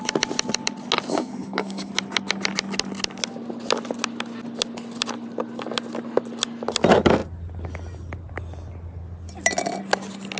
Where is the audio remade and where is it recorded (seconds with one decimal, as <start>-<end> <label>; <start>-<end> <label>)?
0.0-1.1 recorded; 1.1-1.9 remade; 1.9-10.4 recorded